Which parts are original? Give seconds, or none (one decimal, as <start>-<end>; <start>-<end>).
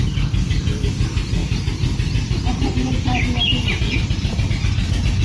0.0-5.2